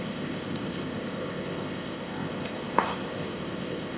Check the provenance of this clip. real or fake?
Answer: fake